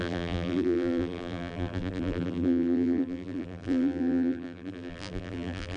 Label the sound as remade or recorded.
remade